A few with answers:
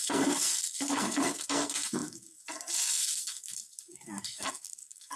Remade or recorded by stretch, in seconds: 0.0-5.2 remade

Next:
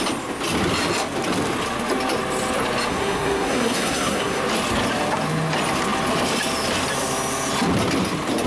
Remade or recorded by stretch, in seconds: 0.0-2.9 recorded; 2.9-4.4 remade; 4.4-8.5 recorded

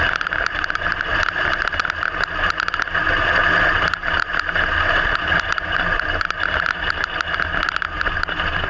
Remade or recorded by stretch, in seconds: 0.0-8.7 recorded

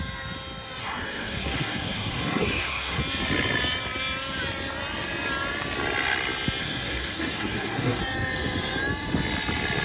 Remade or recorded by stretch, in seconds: 0.0-0.8 recorded; 0.8-3.0 remade; 3.0-6.6 recorded; 6.6-8.0 remade; 8.0-9.8 recorded